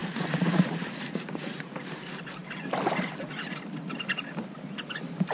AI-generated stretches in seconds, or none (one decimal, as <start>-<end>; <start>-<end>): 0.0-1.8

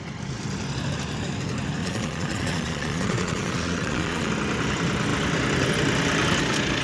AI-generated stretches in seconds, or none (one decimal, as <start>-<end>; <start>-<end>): 1.8-4.3

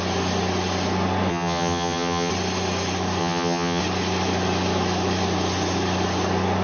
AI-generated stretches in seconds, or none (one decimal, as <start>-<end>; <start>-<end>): 1.3-2.3; 3.2-3.8

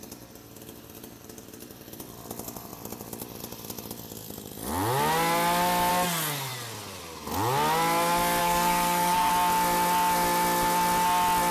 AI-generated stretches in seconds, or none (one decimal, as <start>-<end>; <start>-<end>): 8.4-9.3